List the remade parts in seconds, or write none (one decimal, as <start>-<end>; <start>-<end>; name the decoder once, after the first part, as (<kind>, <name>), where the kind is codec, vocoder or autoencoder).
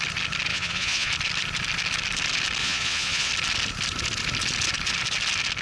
0.5-1.1 (vocoder, Vocos); 2.6-3.3